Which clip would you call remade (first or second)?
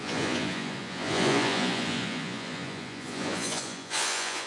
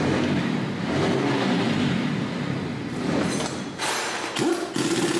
first